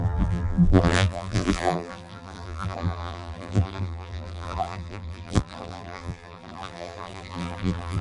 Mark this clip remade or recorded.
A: remade